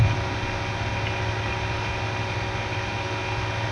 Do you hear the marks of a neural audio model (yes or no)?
no